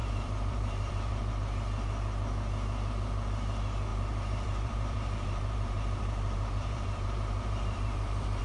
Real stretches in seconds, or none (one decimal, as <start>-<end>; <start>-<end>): 1.3-3.9